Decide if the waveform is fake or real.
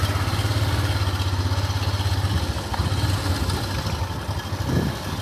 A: real